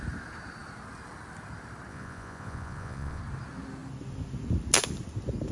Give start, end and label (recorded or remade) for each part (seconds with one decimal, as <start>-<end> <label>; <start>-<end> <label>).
0.0-1.9 recorded; 1.9-3.2 remade; 3.2-5.5 recorded